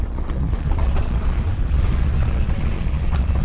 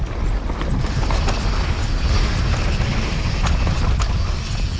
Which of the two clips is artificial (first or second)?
first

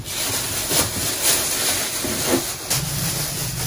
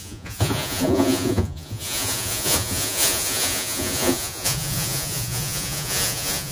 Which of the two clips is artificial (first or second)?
second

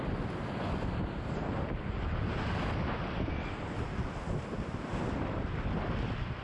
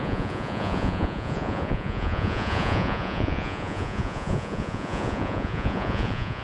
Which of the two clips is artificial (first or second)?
second